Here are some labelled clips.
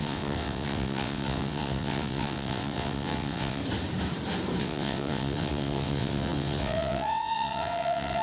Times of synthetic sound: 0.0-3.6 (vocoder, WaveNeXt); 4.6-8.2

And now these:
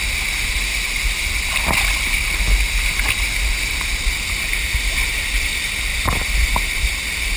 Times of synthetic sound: none

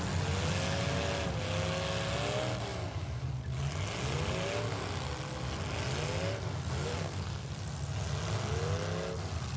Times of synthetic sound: 6.9-7.5 (codec, SNAC)

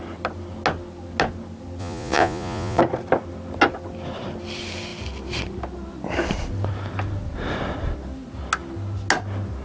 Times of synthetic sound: 1.8-2.8 (vocoder, Vocos)

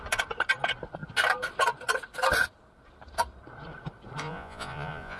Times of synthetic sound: 4.2-5.2 (vocoder, Vocos)